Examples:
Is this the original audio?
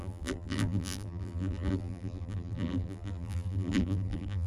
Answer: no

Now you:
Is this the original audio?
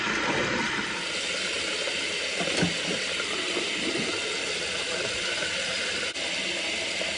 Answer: yes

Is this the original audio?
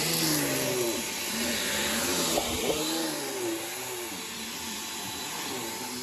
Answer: yes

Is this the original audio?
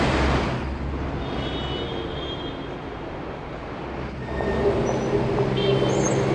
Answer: yes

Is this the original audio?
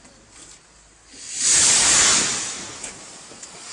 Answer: no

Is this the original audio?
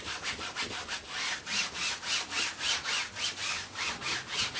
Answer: yes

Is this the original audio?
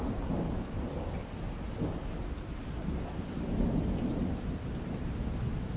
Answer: yes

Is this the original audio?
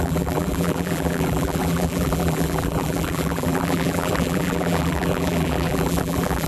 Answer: no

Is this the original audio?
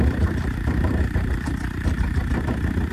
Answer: no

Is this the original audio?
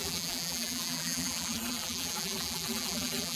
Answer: no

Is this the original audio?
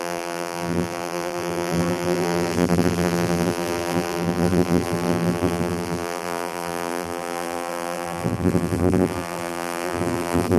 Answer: no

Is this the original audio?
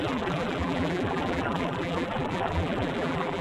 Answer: no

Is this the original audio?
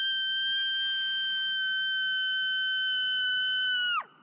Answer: yes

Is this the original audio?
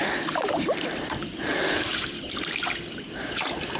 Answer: no